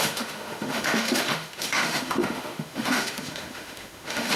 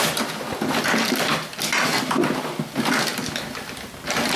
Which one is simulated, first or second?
first